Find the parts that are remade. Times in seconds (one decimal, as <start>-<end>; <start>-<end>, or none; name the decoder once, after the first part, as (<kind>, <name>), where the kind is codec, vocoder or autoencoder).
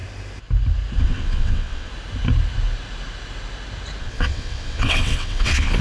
1.0-1.9 (vocoder, WaveNeXt); 4.0-5.8